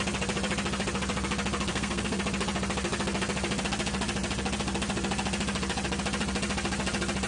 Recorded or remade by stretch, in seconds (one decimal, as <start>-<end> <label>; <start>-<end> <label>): 0.0-1.7 recorded; 1.7-2.2 remade; 2.2-7.3 recorded